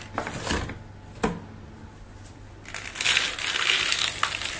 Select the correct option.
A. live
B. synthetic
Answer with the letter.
A